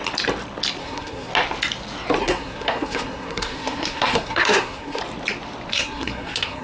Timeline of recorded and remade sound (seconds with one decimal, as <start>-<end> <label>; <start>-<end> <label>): 0.0-0.8 recorded; 0.8-1.3 remade; 1.3-2.2 recorded; 2.2-5.0 remade; 5.0-5.7 recorded; 5.7-6.6 remade